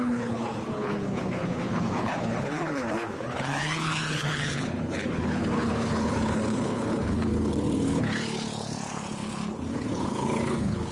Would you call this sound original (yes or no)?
no